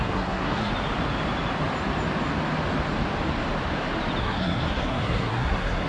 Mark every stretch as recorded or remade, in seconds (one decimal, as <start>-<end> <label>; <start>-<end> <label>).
0.0-0.7 remade; 0.7-4.2 recorded; 4.2-5.9 remade